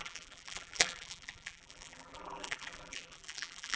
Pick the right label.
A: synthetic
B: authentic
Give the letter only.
A